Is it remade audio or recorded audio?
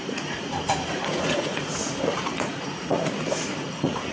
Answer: remade